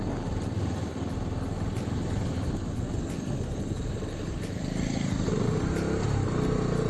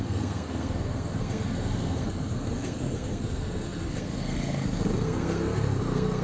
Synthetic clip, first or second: second